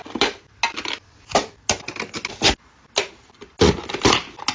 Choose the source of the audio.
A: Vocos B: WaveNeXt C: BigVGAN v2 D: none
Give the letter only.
D